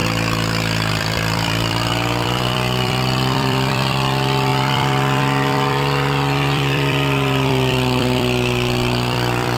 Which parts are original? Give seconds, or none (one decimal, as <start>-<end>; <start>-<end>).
0.0-0.9